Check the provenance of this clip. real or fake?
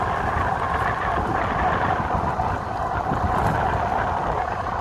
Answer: real